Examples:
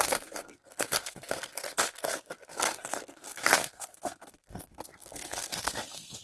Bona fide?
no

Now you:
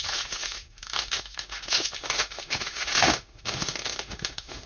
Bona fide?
no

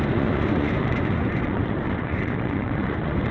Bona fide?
no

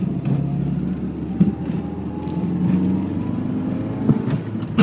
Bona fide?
yes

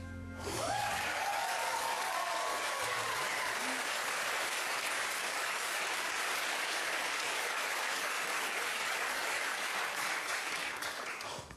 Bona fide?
no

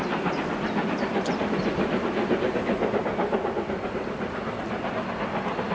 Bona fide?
yes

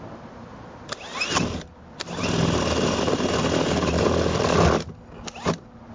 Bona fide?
yes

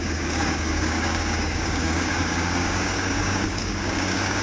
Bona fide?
no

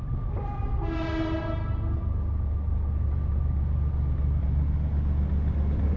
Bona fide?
yes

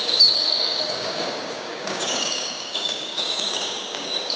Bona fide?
no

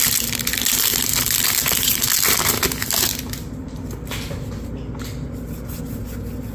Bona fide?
yes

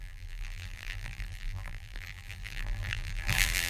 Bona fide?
no